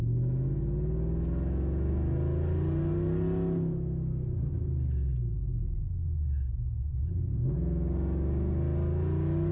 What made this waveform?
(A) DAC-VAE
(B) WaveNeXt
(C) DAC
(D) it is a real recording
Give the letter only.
D